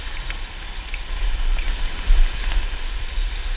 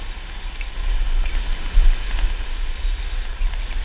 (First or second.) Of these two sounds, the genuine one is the second